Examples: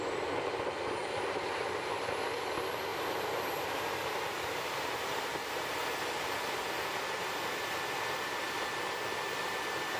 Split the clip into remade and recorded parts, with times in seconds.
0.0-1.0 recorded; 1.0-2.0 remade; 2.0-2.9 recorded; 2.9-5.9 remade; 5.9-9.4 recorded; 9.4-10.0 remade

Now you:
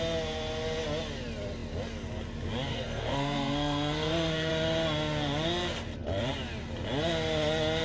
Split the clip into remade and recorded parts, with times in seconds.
0.0-2.7 recorded; 2.7-4.5 remade; 4.5-7.8 recorded

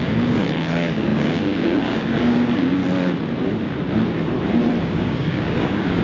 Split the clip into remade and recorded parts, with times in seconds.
0.0-2.8 remade; 2.8-4.8 recorded; 4.8-6.0 remade

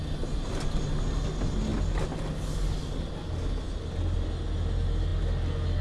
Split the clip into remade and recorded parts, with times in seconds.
0.0-5.8 recorded

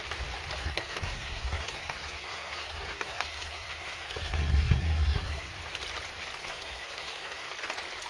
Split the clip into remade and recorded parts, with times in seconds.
0.0-0.6 recorded; 0.6-5.5 remade; 5.5-6.4 recorded; 6.4-7.5 remade; 7.5-8.1 recorded